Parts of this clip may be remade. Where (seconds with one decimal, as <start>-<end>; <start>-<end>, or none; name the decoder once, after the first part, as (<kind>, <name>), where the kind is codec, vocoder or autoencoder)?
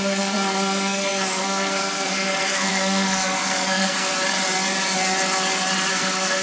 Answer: 0.0-4.1 (codec, SNAC); 5.9-6.4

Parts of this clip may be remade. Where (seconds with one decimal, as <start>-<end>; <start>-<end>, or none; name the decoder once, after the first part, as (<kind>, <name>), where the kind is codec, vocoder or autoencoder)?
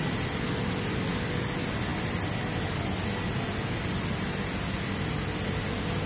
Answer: none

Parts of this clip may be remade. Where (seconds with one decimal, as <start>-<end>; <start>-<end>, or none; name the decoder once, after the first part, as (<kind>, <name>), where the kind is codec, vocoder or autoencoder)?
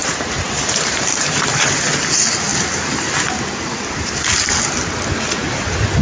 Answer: 0.0-1.9 (vocoder, BigVGAN v2)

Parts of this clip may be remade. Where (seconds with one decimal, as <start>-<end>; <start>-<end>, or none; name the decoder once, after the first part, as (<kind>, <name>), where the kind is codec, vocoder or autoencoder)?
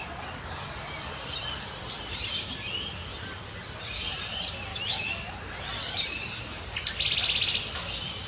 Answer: 4.7-5.3 (autoencoder, DAC-VAE)